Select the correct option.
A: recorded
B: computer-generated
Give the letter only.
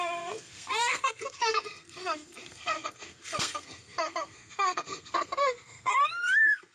B